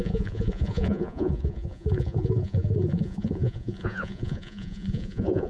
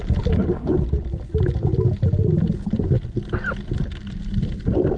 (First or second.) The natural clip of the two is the second